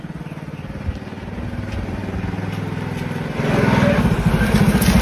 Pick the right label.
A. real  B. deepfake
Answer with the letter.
A